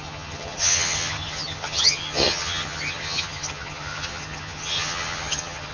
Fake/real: fake